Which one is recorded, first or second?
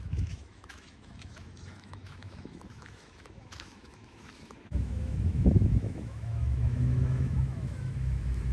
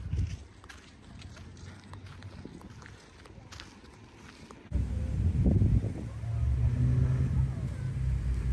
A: second